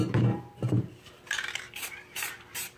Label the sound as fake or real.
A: fake